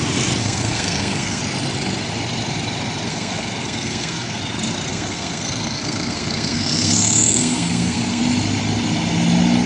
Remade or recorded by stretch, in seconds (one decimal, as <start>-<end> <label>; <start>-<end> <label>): 0.0-0.4 recorded; 0.4-1.4 remade; 1.4-3.1 recorded; 3.1-4.4 remade; 4.4-4.9 recorded; 4.9-8.2 remade; 8.2-9.7 recorded